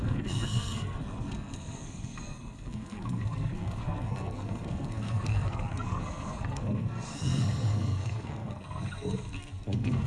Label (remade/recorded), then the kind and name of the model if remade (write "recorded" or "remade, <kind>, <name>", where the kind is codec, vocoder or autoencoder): remade, codec, SNAC